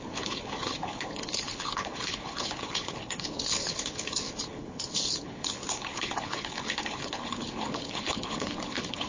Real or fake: fake